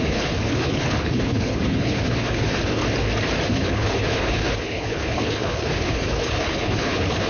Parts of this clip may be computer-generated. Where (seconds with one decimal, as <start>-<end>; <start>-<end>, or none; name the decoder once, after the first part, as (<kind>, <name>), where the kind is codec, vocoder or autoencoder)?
0.0-2.8 (codec, HILCodec); 3.5-7.3